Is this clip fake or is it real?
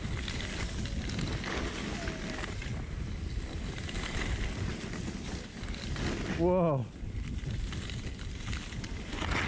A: real